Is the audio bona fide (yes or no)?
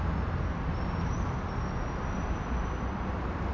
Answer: yes